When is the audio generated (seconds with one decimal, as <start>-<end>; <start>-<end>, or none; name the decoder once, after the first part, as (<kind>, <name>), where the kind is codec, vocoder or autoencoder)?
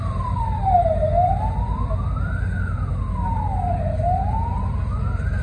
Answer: none